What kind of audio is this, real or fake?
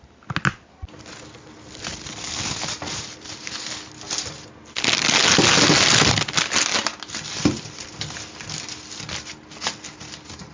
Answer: real